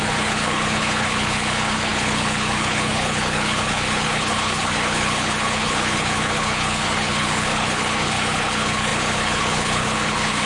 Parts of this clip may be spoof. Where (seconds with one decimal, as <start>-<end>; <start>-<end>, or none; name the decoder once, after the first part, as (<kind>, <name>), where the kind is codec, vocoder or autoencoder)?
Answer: 0.0-10.5 (codec, HILCodec)